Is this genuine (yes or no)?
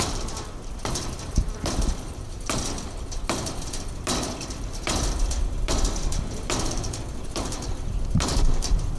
no